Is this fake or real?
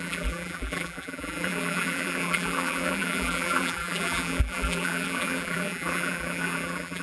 fake